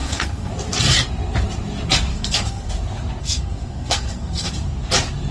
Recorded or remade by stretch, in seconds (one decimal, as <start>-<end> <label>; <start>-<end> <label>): 0.0-0.5 remade; 0.5-2.1 recorded; 2.1-2.7 remade; 2.7-3.2 recorded; 3.2-4.5 remade; 4.5-5.3 recorded